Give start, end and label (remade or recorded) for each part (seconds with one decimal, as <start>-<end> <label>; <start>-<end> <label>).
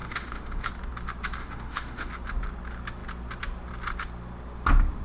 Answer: 0.0-0.7 remade; 0.7-1.4 recorded; 1.4-2.1 remade; 2.1-5.0 recorded